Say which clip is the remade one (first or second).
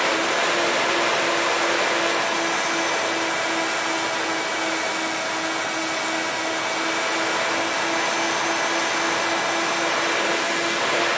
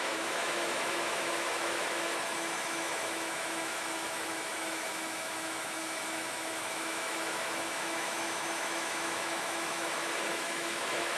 second